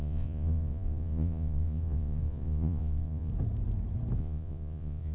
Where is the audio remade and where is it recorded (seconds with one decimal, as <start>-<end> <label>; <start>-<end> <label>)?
0.0-3.3 remade; 3.3-4.2 recorded; 4.2-5.1 remade